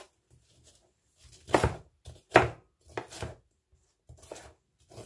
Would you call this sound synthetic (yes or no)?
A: no